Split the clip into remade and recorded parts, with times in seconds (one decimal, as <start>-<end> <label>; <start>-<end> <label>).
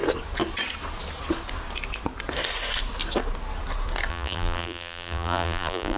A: 0.0-4.1 recorded; 4.1-6.0 remade